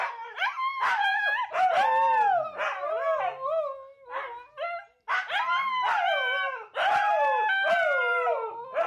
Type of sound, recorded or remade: recorded